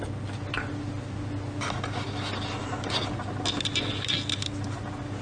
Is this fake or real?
real